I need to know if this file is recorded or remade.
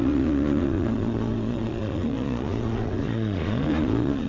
remade